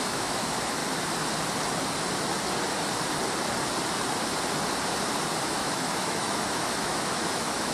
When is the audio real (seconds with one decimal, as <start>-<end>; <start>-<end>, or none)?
0.8-5.4